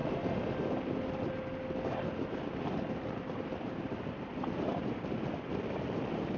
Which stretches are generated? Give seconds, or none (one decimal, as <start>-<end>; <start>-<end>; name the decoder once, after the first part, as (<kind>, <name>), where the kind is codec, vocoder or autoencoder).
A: none